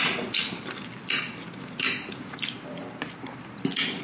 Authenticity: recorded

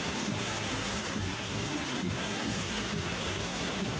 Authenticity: remade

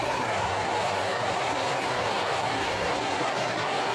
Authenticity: remade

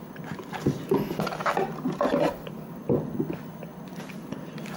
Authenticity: recorded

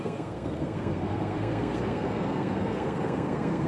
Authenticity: remade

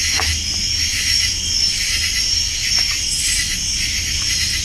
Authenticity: recorded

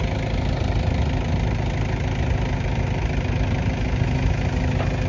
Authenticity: recorded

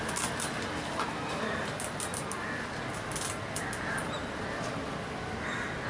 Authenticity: recorded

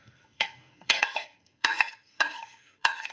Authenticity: remade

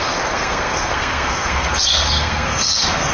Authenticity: remade